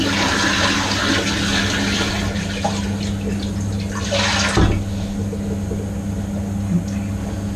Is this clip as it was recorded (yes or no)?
yes